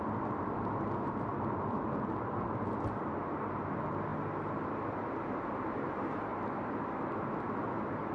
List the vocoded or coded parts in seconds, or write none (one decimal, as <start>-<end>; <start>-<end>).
none